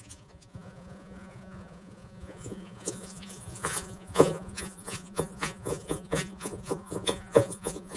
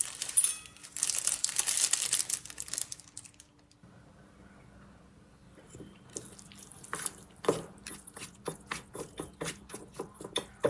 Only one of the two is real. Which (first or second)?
second